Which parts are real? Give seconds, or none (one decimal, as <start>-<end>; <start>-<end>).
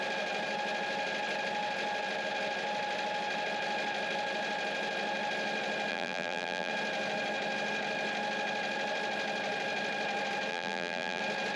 0.0-5.9; 6.7-10.5; 11.2-11.6